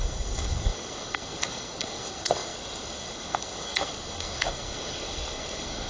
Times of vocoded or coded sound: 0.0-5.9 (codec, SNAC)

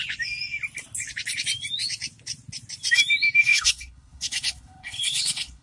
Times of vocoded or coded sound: 3.4-5.6 (codec, HILCodec)

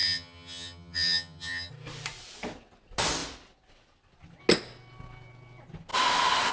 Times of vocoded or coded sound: 0.0-1.7 (vocoder, HiFi-GAN)